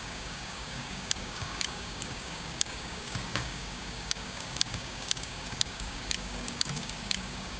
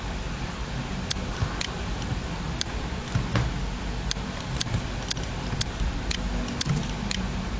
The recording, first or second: second